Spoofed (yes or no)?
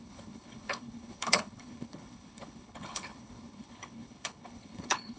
yes